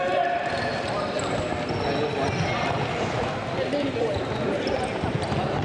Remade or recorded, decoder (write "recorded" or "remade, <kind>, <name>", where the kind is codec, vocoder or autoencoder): recorded